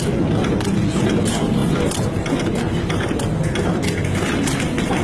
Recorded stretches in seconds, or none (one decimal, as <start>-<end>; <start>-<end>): 0.0-5.0